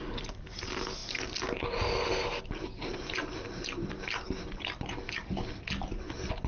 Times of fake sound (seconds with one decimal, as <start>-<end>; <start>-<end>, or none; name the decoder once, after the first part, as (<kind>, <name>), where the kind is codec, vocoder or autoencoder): none